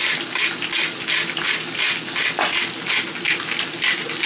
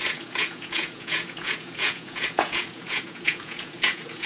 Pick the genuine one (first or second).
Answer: first